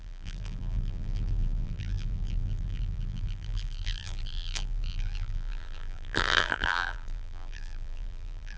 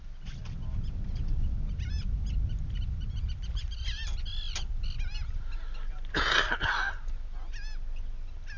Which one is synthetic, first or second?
first